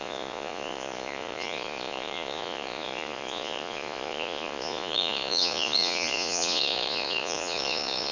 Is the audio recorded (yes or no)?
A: no